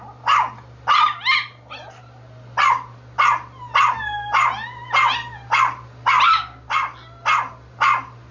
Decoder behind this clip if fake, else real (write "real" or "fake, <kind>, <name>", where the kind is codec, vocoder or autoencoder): real